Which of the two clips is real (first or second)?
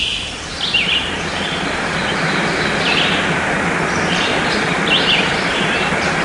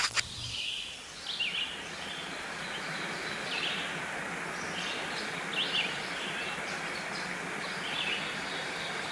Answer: second